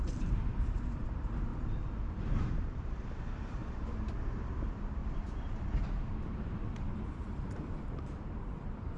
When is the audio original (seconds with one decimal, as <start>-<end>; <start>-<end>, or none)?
1.5-2.4; 3.6-4.1; 5.0-5.8